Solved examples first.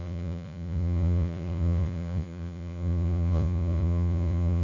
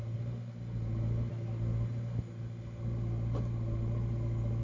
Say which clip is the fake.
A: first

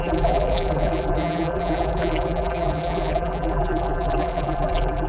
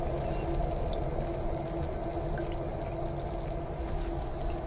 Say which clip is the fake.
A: first